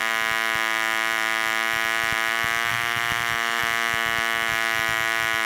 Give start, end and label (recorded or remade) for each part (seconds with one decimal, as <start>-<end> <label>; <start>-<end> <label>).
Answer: 0.0-2.7 recorded; 2.7-3.6 remade; 3.6-5.5 recorded

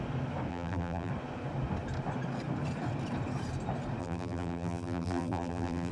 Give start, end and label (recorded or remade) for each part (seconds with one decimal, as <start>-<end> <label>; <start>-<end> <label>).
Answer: 0.0-0.5 recorded; 0.5-1.1 remade; 1.1-4.0 recorded; 4.0-5.9 remade